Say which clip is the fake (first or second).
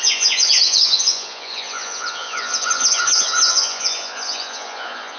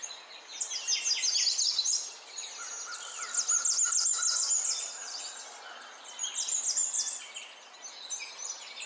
first